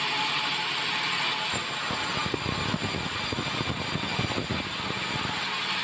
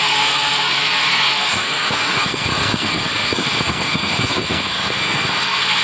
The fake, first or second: second